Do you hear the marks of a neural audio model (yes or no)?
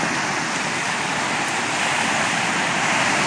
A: no